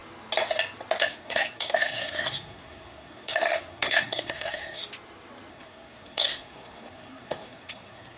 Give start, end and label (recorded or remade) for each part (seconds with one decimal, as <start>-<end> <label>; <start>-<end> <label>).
0.0-1.0 recorded; 1.0-4.8 remade; 4.8-5.5 recorded; 5.5-8.2 remade

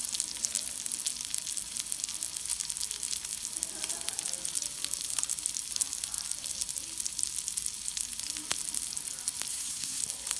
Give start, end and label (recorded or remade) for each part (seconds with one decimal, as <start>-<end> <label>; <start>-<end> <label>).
0.0-9.5 recorded; 9.5-10.0 remade; 10.0-10.4 recorded